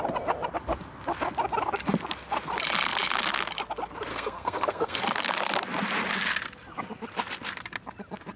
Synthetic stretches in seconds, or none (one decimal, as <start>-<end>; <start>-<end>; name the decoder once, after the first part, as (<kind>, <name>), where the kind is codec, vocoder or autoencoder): 4.1-5.0 (codec, SNAC)